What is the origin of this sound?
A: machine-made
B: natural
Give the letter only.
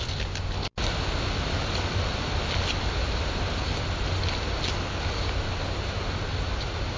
B